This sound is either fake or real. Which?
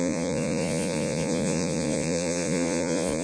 fake